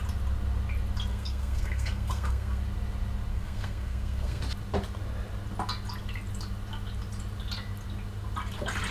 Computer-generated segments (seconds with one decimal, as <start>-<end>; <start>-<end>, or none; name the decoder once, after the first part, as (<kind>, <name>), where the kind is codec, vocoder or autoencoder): 1.1-2.6 (codec, SNAC); 3.3-4.4